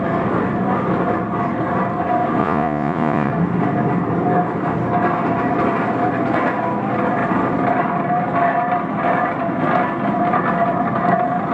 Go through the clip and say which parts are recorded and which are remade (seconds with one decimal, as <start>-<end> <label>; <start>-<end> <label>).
0.0-2.4 recorded; 2.4-3.3 remade; 3.3-11.5 recorded